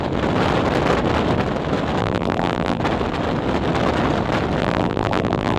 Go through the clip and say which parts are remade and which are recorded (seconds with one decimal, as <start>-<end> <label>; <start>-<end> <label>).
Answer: 0.0-2.0 recorded; 2.0-2.8 remade; 2.8-4.6 recorded; 4.6-5.6 remade